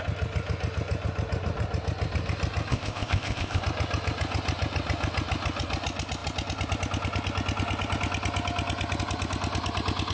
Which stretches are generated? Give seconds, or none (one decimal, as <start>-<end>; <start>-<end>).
2.7-3.6